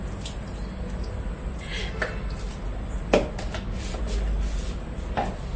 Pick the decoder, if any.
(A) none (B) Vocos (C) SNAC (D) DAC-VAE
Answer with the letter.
A